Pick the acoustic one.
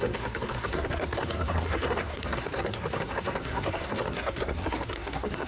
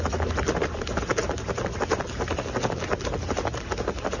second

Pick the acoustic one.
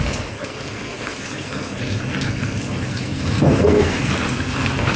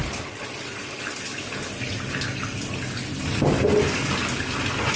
second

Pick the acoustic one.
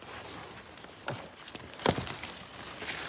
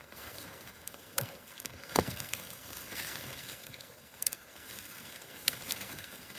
first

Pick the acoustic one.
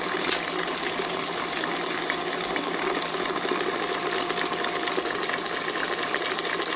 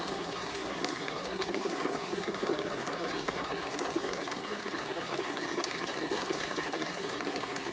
first